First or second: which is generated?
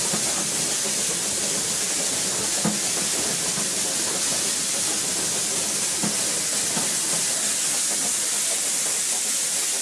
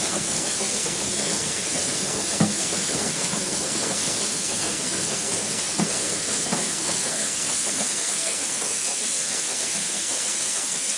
second